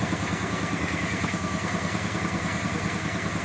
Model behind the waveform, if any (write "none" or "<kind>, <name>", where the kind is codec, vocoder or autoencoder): codec, SNAC